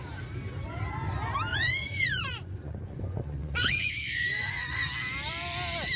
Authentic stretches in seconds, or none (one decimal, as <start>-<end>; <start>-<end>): 0.0-1.5; 4.9-6.0